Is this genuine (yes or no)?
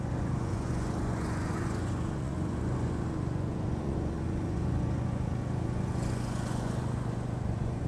no